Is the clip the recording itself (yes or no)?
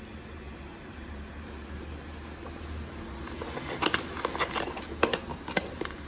yes